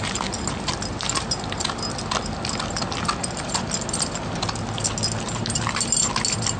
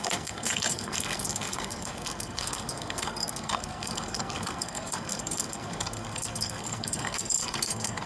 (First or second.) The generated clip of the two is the second